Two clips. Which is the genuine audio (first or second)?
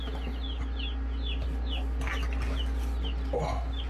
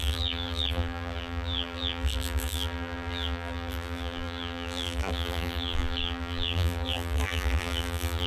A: first